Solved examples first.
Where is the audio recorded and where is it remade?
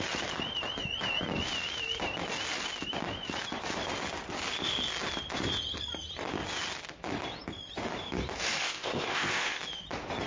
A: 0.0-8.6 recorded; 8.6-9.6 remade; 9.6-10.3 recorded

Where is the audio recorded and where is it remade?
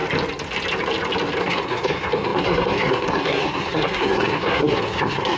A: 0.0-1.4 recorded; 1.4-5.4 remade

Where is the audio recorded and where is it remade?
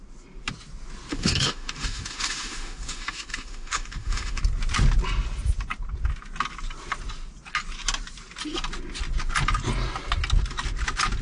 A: 0.0-1.1 recorded; 1.1-4.4 remade; 4.4-11.2 recorded